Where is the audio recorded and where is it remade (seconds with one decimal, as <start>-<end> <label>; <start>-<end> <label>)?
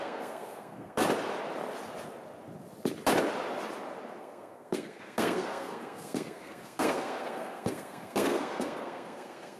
0.0-1.0 remade; 1.0-4.2 recorded; 4.2-9.6 remade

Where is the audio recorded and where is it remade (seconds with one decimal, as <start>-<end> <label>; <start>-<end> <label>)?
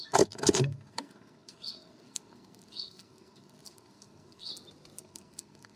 0.0-4.5 remade; 4.5-5.0 recorded; 5.0-5.8 remade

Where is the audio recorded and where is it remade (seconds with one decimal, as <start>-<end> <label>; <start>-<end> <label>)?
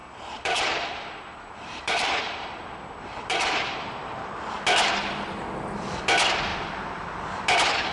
0.0-4.3 remade; 4.3-7.9 recorded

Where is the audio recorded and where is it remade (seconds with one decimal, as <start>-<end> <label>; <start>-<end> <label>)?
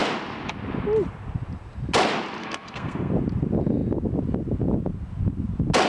0.0-2.4 recorded; 2.4-3.1 remade; 3.1-5.9 recorded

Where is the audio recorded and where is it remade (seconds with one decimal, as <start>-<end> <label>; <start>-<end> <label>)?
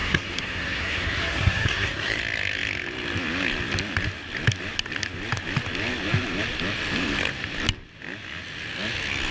0.0-2.2 remade; 2.2-9.3 recorded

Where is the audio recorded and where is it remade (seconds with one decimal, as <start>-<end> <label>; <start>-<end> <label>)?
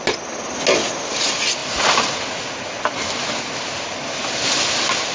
0.0-5.1 recorded